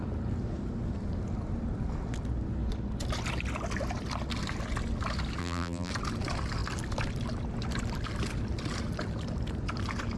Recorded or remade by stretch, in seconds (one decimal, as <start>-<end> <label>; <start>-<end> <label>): 0.0-5.4 recorded; 5.4-5.9 remade; 5.9-10.2 recorded

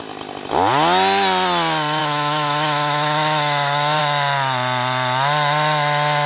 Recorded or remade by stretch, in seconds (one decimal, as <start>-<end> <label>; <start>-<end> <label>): 0.0-2.0 recorded; 2.0-4.0 remade; 4.0-6.3 recorded

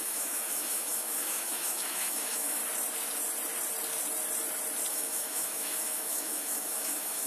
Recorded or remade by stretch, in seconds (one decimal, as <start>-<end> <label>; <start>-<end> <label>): 0.0-2.6 remade; 2.6-4.9 recorded; 4.9-7.3 remade

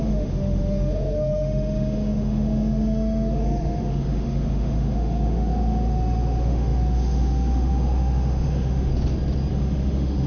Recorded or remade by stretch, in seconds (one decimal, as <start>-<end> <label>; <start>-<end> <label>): 0.0-8.9 remade; 8.9-9.5 recorded; 9.5-10.3 remade

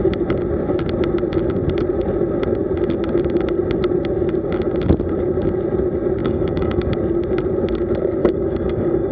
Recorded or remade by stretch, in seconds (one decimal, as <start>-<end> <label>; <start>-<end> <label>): 0.0-6.2 recorded; 6.2-6.9 remade; 6.9-8.2 recorded; 8.2-9.1 remade

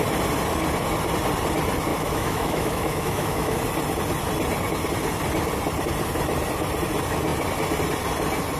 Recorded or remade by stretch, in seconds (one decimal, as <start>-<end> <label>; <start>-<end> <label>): 0.0-1.9 recorded; 1.9-3.6 remade; 3.6-8.6 recorded

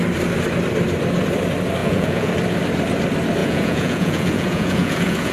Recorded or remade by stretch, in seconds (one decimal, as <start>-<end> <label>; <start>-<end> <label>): 0.0-1.8 recorded; 1.8-2.3 remade; 2.3-3.4 recorded; 3.4-5.3 remade

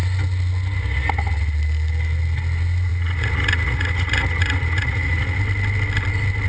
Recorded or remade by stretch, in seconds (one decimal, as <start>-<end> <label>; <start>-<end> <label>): 0.0-2.9 recorded; 2.9-5.4 remade; 5.4-6.5 recorded